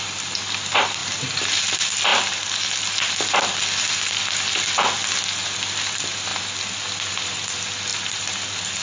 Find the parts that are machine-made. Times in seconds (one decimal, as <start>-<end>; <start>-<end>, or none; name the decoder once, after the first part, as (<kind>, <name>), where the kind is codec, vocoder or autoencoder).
1.0-1.6 (vocoder, BigVGAN v2); 7.9-8.8